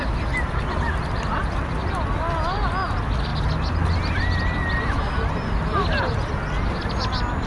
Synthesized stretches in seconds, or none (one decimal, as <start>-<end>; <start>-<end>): none